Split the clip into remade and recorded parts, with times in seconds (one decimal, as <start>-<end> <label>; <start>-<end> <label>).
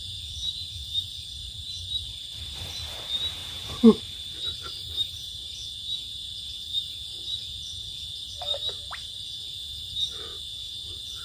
0.0-11.2 remade